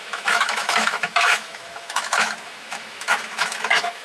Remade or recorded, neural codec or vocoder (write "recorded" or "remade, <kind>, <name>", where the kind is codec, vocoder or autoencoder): remade, autoencoder, DAC-VAE